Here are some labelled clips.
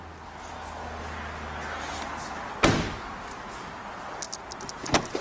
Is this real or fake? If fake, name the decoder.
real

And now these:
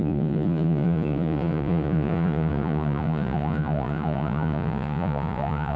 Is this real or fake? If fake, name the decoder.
fake, vocoder, Vocos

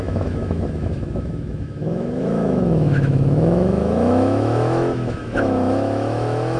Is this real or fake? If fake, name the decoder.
fake, autoencoder, DAC-VAE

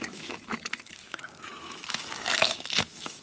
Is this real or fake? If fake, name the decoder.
fake, autoencoder, DAC-VAE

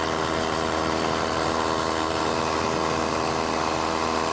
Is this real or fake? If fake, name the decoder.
real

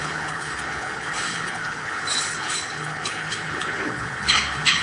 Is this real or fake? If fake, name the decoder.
fake, codec, HILCodec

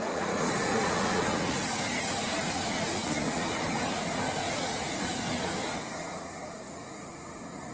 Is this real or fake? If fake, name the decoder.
fake, vocoder, Vocos